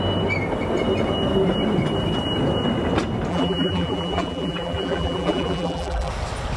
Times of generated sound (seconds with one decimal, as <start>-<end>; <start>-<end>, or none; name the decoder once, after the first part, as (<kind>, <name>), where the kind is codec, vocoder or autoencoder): 3.3-6.1 (vocoder, BigVGAN v2)